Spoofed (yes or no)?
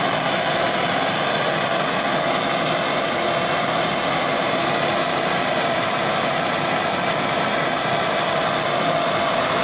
no